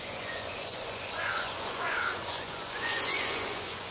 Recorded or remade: remade